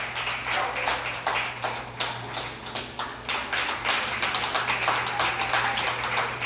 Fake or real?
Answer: real